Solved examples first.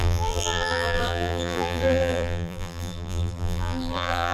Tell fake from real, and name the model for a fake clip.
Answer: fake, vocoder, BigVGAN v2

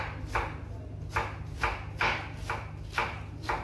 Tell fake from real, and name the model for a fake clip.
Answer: real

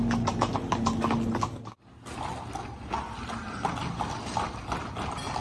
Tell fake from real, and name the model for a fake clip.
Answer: real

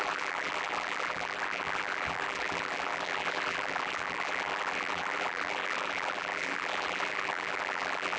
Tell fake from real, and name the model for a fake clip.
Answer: fake, vocoder, BigVGAN v2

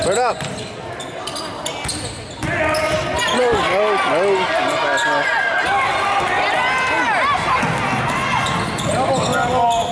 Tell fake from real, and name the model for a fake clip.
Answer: real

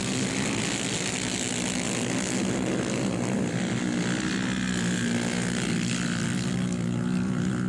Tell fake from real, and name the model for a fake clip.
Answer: real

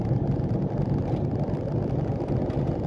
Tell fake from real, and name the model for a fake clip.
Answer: real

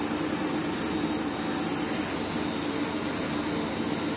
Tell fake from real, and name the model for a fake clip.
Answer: real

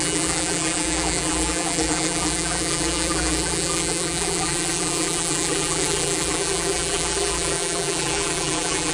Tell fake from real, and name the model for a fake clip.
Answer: fake, vocoder, BigVGAN v2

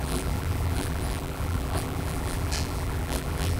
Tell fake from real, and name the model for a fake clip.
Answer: fake, vocoder, BigVGAN v2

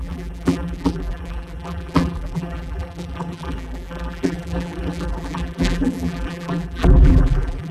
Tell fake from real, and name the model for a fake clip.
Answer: fake, vocoder, BigVGAN v2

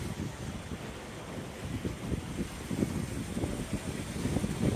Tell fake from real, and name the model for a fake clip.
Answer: real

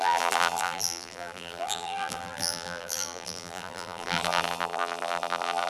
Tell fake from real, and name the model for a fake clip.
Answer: fake, vocoder, BigVGAN v2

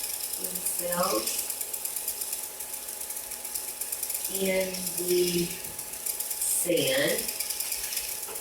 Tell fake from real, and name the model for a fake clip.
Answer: real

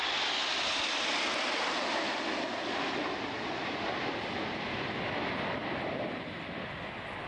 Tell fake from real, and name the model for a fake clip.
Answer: real